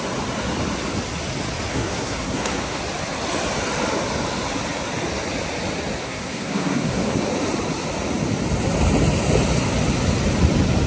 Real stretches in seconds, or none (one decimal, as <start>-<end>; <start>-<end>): 0.0-1.7; 2.8-6.0; 7.3-10.9